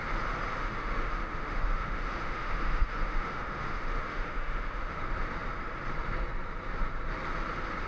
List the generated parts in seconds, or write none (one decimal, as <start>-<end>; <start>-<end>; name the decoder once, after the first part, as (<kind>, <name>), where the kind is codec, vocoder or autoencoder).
0.6-5.0 (autoencoder, DAC-VAE)